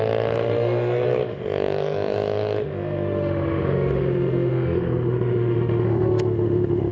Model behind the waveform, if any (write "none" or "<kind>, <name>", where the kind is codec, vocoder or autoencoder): autoencoder, DAC-VAE